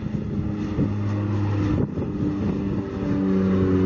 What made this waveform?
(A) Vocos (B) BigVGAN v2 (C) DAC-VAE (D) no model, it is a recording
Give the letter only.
D